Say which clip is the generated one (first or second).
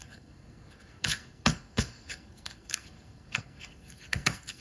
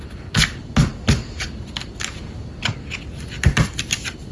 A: first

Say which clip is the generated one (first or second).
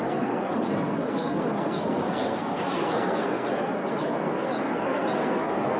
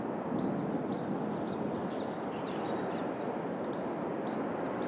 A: first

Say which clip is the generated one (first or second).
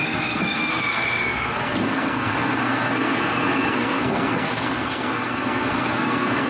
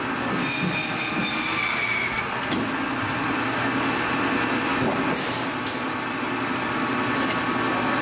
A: first